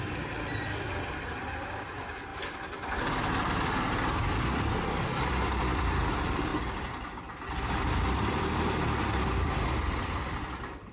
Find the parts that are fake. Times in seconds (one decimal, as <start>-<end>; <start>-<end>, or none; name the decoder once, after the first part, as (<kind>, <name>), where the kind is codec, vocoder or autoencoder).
0.0-6.5 (vocoder, BigVGAN v2); 7.2-10.9